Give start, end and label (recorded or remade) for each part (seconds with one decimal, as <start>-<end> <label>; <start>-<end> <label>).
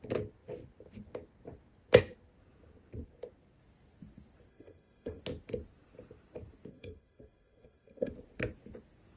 0.0-4.5 recorded; 4.5-5.2 remade; 5.2-6.7 recorded; 6.7-8.1 remade; 8.1-9.2 recorded